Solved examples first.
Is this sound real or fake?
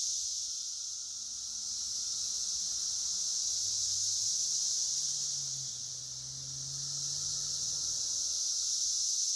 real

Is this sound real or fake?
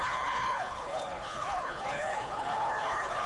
fake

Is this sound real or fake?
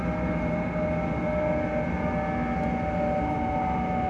real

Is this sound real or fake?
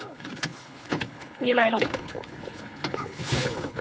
fake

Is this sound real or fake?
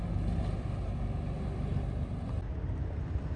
real